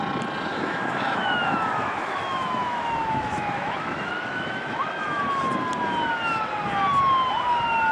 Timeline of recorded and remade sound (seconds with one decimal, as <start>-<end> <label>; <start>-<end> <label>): 0.0-0.5 recorded; 0.5-5.2 remade; 5.2-7.9 recorded